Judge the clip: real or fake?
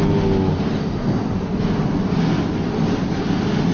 real